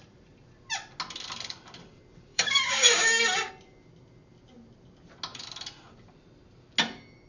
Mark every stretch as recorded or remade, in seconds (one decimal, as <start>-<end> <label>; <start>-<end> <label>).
0.0-2.3 recorded; 2.3-3.5 remade; 3.5-7.3 recorded